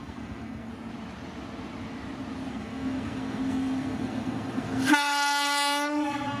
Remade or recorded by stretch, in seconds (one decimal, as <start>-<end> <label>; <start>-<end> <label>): 0.0-0.7 remade; 0.7-2.5 recorded; 2.5-6.4 remade